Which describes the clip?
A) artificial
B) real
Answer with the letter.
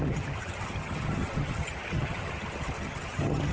A